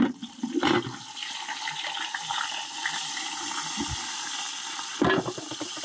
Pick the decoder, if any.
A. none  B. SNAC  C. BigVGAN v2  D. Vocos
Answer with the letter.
A